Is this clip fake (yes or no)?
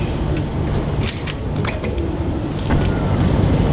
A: no